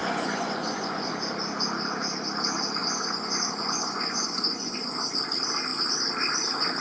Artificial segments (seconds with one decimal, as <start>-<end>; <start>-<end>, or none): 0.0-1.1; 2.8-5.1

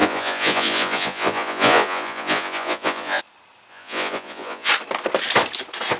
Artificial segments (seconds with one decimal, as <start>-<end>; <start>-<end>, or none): 0.0-3.2; 3.7-4.7

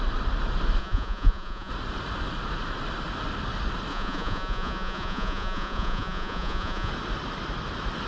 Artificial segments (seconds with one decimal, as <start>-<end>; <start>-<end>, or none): 0.8-1.7; 3.9-6.9

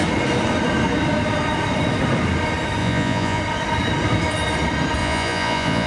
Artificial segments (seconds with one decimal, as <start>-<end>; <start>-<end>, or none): 2.8-3.4; 5.0-5.9

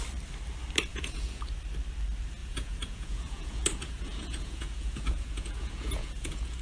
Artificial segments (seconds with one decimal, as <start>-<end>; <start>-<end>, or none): 0.9-1.4; 2.4-6.6